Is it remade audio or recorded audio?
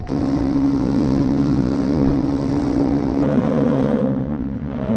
remade